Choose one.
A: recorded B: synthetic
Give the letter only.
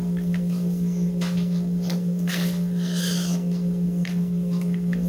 B